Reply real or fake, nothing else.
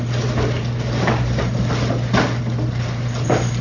real